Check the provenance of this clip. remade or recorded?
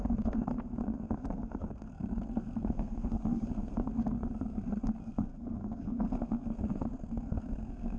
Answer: remade